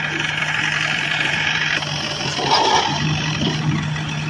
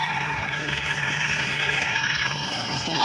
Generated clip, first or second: second